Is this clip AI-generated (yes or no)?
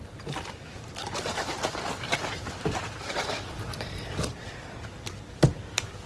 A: yes